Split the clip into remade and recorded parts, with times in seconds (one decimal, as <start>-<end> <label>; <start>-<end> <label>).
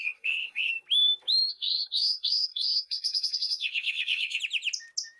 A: 0.0-0.7 remade; 0.7-1.5 recorded; 1.5-4.4 remade; 4.4-5.2 recorded